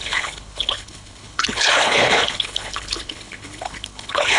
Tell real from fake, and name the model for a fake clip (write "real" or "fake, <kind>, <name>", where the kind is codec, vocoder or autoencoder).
fake, codec, HILCodec